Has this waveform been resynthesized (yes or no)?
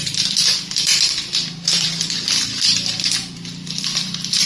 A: yes